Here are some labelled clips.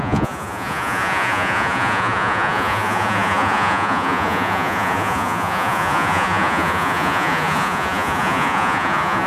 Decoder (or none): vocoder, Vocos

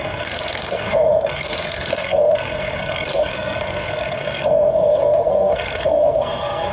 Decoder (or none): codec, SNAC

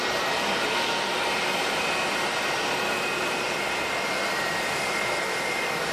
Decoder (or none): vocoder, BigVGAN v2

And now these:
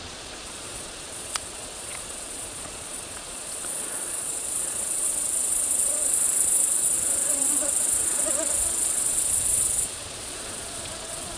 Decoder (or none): vocoder, Vocos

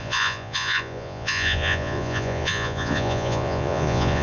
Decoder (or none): vocoder, Vocos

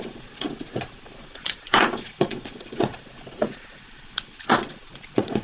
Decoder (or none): vocoder, Vocos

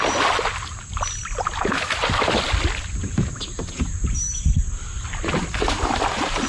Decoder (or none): none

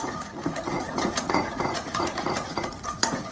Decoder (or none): vocoder, Vocos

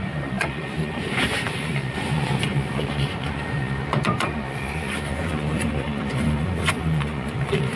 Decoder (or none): vocoder, Vocos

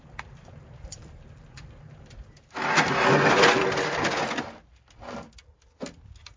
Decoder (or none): none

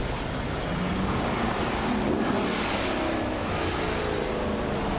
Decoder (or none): none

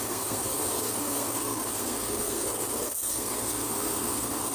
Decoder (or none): codec, SNAC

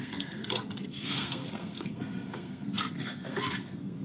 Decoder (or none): codec, SNAC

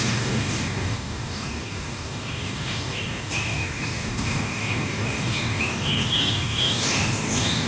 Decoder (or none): codec, DAC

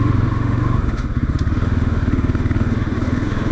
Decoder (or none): autoencoder, DAC-VAE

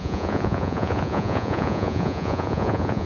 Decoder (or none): vocoder, Vocos